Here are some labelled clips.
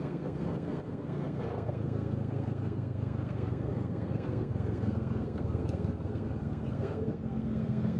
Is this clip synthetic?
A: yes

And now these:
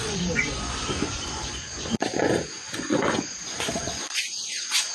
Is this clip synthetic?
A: yes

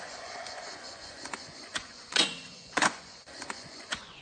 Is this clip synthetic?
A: yes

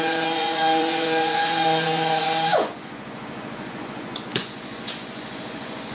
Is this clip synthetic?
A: yes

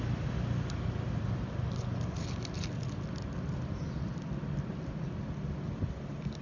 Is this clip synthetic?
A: no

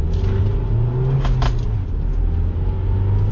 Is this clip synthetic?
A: no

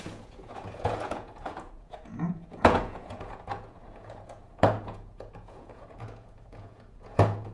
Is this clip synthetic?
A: yes